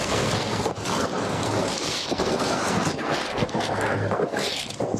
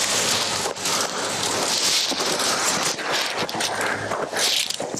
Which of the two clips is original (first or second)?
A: second